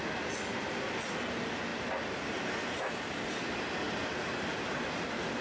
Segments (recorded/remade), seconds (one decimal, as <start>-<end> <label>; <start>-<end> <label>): 0.0-5.4 recorded